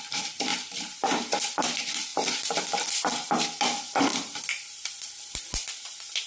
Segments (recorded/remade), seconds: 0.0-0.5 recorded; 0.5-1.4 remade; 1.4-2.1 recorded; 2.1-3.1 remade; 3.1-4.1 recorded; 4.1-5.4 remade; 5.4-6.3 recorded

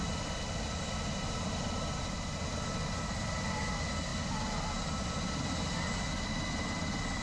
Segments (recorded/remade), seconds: 0.0-7.2 recorded

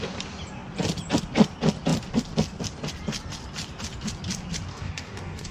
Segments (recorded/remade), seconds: 0.0-4.7 recorded; 4.7-5.5 remade

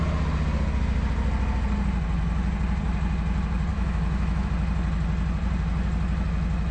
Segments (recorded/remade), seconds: 0.0-3.7 recorded; 3.7-4.5 remade; 4.5-6.7 recorded

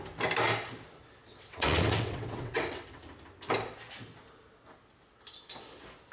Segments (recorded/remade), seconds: 0.0-1.2 recorded; 1.2-3.0 remade; 3.0-6.1 recorded

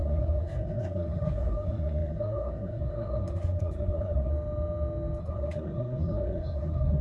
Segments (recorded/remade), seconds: 0.0-4.3 remade; 4.3-5.2 recorded; 5.2-7.0 remade